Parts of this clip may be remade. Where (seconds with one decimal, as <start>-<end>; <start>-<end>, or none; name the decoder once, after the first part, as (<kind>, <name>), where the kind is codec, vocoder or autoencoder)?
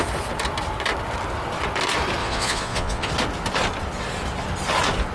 2.2-3.1 (vocoder, Vocos)